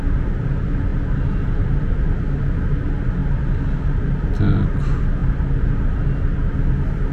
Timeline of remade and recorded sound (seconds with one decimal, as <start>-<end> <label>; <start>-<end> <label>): 0.0-7.1 recorded